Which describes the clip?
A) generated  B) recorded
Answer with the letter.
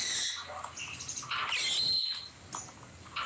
B